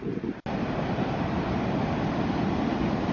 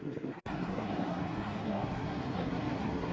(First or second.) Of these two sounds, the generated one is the second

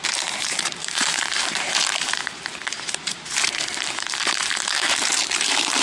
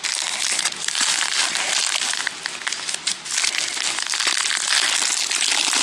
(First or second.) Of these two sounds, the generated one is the first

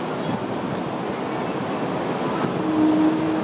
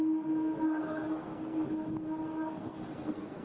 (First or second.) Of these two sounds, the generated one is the second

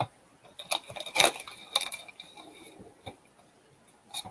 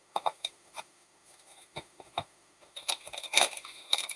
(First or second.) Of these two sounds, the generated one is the second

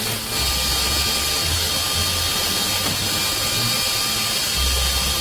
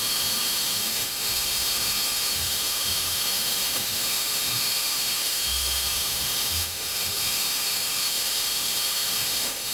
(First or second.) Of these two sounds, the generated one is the second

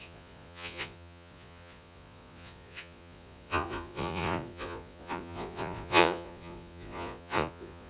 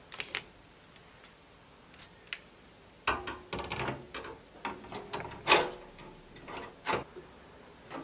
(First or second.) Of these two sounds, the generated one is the first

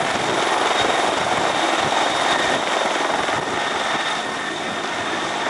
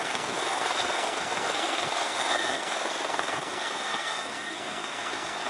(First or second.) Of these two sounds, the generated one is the second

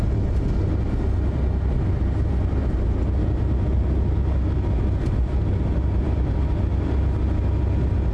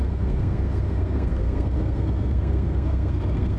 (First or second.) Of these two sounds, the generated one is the second